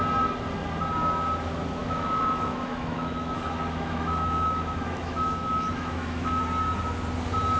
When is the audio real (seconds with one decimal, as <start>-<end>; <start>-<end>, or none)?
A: 0.0-1.8; 6.4-7.6